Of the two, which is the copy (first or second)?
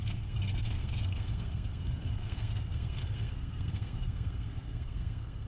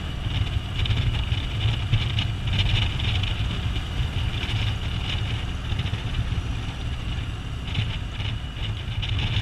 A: first